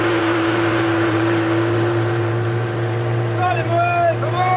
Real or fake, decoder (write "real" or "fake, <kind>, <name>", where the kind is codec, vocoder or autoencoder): fake, vocoder, BigVGAN v2